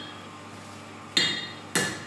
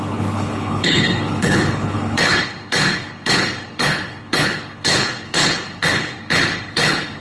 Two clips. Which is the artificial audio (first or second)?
second